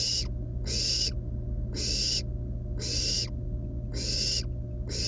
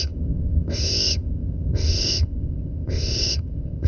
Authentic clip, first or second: first